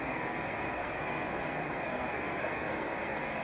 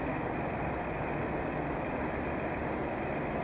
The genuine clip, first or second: second